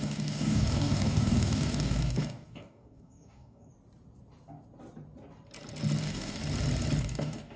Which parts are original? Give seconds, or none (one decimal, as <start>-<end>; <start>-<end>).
3.7-6.0; 6.4-7.0